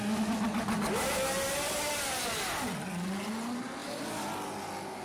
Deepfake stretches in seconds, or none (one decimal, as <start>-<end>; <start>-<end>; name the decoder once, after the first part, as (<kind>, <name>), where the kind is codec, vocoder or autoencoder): 3.8-4.3 (vocoder, BigVGAN v2)